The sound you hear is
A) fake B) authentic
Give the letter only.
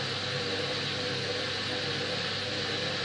B